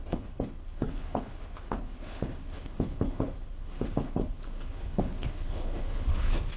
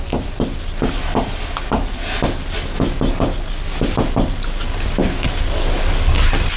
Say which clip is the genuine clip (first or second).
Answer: second